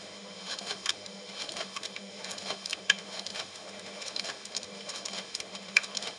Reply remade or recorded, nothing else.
remade